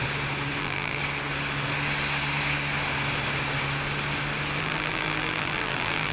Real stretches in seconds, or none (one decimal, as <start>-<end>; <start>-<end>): 0.0-0.6; 1.0-4.6